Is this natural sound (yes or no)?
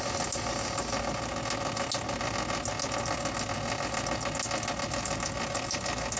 yes